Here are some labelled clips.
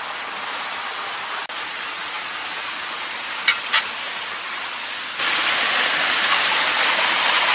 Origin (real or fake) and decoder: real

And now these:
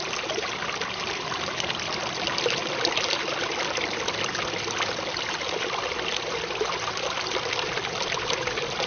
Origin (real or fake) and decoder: real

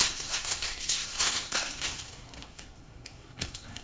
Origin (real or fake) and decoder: fake, codec, SNAC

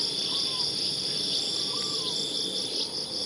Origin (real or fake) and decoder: real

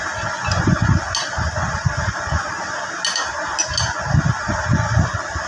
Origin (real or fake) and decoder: real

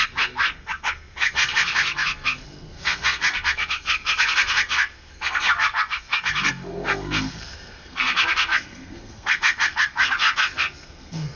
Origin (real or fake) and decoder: fake, codec, SNAC